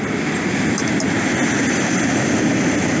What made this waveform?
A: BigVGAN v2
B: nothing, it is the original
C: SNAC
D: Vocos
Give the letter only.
B